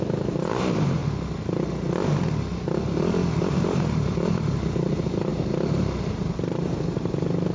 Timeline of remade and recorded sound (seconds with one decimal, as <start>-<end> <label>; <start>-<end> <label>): 0.0-1.0 remade; 1.0-3.4 recorded; 3.4-5.3 remade; 5.3-6.0 recorded; 6.0-7.5 remade